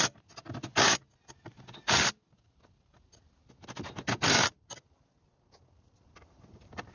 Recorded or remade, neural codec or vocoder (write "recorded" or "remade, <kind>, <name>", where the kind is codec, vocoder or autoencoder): recorded